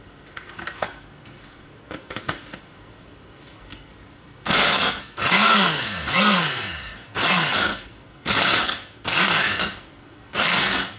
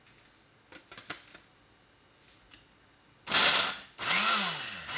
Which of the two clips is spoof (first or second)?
first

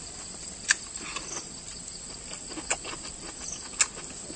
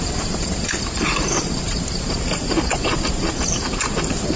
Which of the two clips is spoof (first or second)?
second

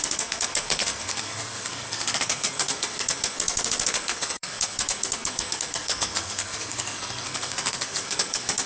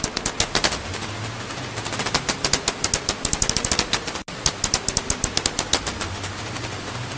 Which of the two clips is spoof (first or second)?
first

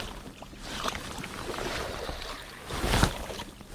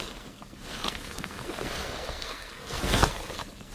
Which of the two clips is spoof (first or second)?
second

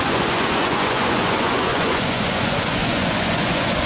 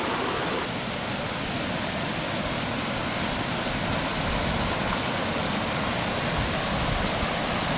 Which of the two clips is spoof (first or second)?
first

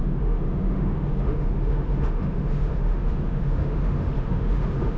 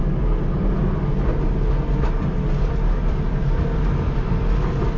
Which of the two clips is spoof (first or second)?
first